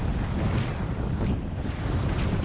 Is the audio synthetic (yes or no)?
no